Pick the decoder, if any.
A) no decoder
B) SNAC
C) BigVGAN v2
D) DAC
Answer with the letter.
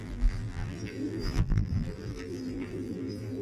C